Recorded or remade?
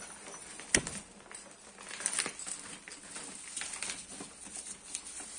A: recorded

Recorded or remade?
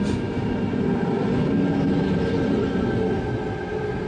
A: recorded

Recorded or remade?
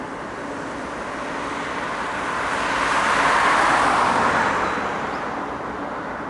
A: recorded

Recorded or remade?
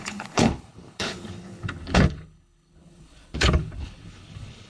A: remade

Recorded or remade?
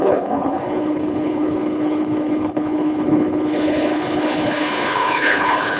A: remade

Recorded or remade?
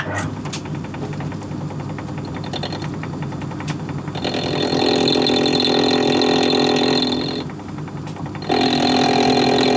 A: recorded